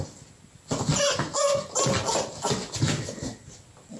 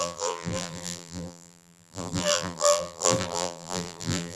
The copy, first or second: second